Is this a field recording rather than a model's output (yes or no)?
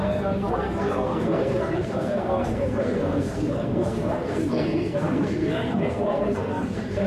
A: no